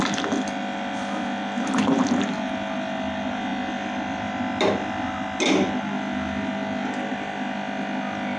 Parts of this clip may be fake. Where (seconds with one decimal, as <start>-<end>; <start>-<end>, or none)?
none